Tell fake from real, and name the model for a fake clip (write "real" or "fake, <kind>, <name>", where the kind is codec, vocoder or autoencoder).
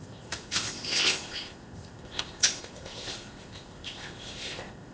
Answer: fake, codec, ZipCodec